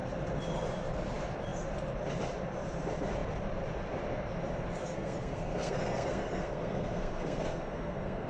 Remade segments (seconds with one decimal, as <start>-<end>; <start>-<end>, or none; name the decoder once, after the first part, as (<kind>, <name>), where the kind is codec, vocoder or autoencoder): 4.8-8.3 (codec, SNAC)